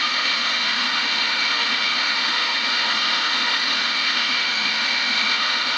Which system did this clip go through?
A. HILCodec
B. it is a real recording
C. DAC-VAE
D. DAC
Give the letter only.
C